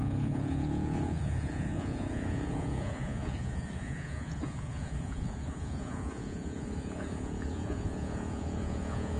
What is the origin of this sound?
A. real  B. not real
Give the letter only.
B